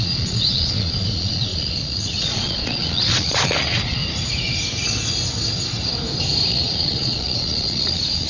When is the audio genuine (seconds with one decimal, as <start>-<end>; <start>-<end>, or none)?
4.0-6.5